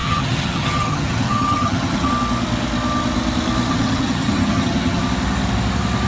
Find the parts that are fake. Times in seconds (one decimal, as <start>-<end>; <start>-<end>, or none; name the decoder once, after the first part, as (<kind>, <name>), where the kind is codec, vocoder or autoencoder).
0.0-2.1 (vocoder, HiFi-GAN); 3.7-5.0